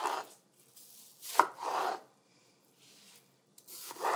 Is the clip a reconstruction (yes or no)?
no